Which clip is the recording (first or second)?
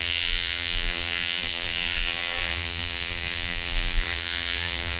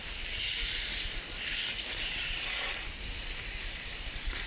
second